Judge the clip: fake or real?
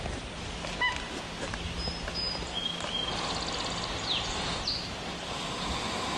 real